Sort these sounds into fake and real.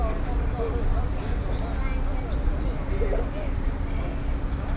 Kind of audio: real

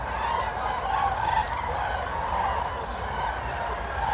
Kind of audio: real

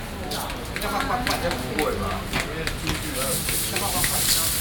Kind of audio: real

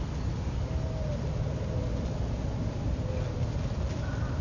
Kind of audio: real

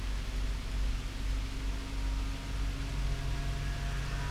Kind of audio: real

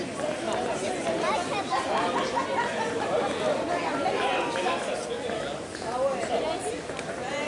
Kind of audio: real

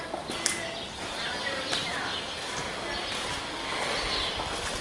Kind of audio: real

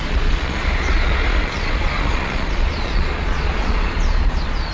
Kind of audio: fake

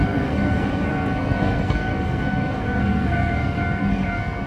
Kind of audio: fake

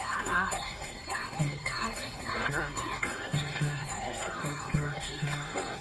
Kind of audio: fake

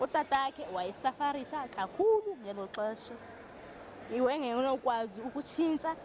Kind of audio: real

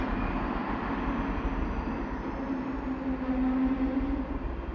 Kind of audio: real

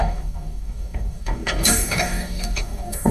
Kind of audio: fake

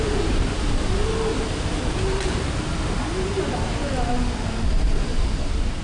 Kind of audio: real